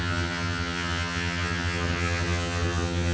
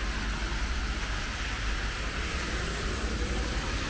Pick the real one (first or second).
second